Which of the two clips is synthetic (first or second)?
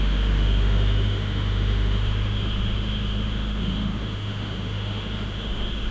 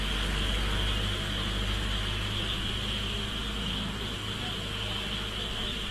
first